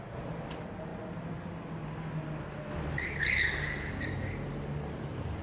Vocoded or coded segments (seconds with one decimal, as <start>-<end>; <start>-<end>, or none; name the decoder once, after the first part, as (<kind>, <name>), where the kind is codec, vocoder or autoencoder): none